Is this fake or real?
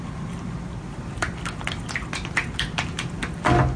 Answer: real